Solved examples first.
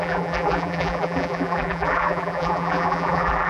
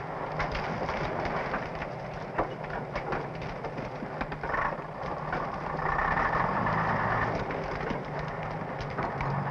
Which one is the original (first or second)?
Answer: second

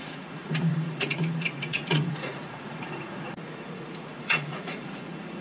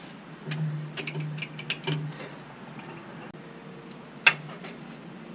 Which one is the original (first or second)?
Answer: second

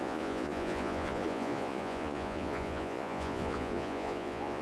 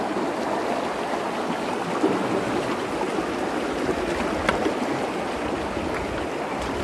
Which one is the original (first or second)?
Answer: second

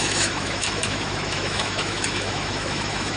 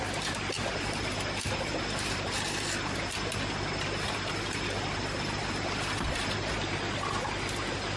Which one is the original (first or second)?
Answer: second